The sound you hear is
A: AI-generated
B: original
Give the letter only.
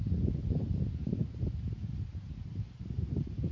A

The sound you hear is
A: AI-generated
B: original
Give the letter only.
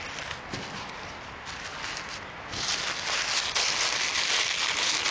B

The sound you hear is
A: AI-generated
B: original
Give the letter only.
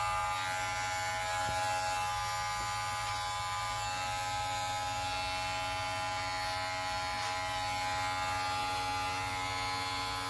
B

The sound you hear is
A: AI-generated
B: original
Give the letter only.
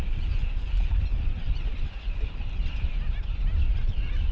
B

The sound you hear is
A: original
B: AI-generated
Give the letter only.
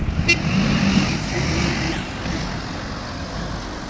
A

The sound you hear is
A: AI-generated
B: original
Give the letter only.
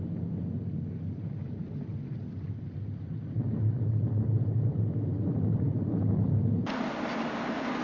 B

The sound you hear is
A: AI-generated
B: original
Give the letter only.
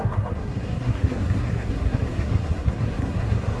A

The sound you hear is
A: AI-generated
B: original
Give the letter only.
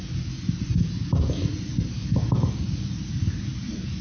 B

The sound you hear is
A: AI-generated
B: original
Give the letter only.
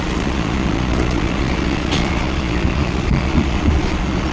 A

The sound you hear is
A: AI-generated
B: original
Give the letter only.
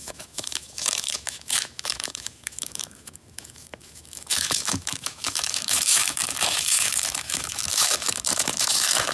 A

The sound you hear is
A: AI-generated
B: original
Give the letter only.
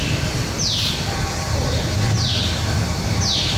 A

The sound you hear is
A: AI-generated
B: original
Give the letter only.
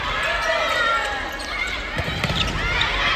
B